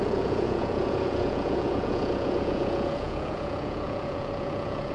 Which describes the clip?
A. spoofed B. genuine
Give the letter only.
A